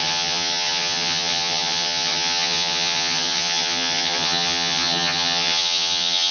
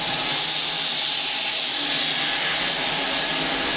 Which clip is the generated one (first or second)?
first